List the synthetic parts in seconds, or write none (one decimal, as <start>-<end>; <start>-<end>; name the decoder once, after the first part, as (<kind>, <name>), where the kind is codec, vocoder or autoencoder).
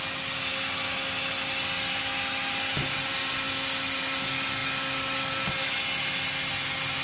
none